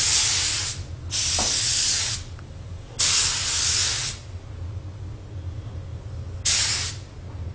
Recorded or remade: recorded